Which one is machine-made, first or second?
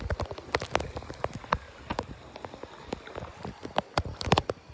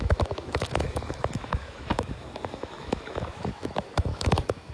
second